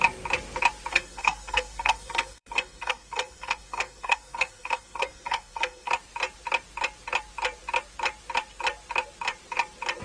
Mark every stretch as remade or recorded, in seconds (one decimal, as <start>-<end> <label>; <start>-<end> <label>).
0.0-0.9 recorded; 0.9-5.9 remade; 5.9-10.0 recorded